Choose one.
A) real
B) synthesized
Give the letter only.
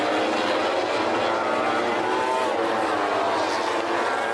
A